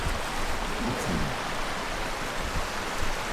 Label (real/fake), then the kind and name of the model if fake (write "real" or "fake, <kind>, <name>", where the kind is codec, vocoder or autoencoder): real